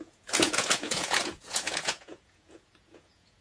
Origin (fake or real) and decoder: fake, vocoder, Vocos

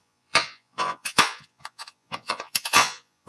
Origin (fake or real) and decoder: fake, vocoder, Vocos